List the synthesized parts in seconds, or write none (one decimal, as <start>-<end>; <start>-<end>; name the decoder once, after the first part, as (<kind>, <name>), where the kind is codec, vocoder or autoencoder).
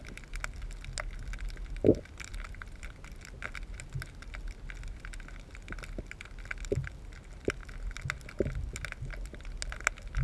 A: none